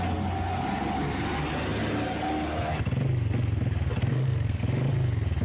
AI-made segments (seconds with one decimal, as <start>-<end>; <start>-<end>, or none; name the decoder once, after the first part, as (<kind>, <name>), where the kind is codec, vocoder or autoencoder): 4.0-4.6 (codec, SNAC)